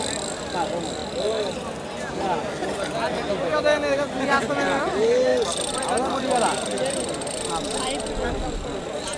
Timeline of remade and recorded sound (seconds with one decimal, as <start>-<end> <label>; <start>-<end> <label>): 0.0-9.2 recorded